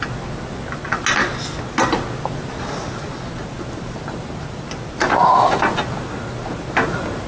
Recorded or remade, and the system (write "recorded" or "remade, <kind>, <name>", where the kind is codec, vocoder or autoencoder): recorded